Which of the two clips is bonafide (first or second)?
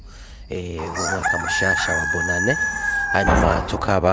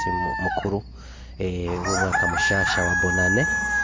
second